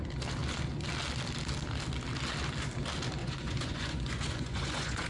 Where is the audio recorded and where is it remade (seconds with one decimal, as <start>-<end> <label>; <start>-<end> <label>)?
0.0-3.2 recorded; 3.2-5.1 remade